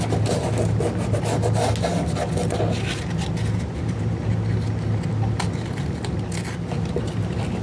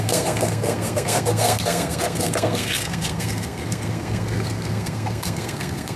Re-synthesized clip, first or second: second